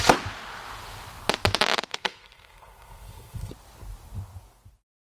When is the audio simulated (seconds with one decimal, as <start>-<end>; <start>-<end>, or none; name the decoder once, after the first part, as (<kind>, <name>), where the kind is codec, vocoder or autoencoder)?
1.9-3.5 (codec, SNAC)